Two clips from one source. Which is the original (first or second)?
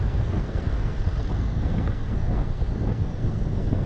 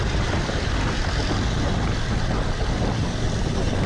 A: second